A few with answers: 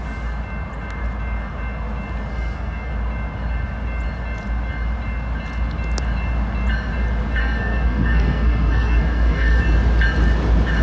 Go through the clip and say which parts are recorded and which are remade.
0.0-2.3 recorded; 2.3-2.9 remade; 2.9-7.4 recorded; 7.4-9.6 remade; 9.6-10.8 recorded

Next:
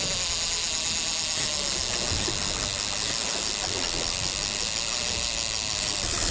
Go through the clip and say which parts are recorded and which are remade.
0.0-6.3 recorded

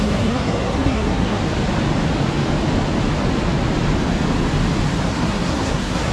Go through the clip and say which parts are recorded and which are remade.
0.0-1.4 remade; 1.4-5.1 recorded; 5.1-6.1 remade

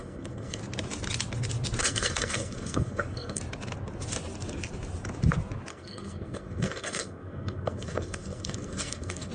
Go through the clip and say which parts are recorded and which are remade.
0.0-0.6 remade; 0.6-1.8 recorded; 1.8-3.4 remade; 3.4-5.7 recorded; 5.7-9.3 remade

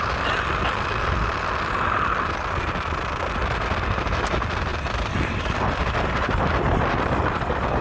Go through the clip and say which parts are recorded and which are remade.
0.0-7.8 recorded

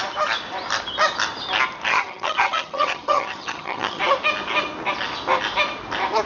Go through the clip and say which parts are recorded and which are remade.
0.0-1.9 recorded; 1.9-4.0 remade; 4.0-6.3 recorded

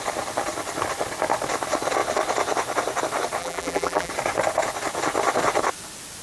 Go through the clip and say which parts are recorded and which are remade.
0.0-3.4 recorded; 3.4-4.1 remade; 4.1-6.2 recorded

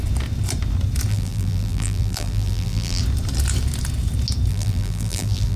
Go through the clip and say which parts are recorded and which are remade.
0.0-1.1 recorded; 1.1-3.0 remade; 3.0-4.5 recorded; 4.5-5.6 remade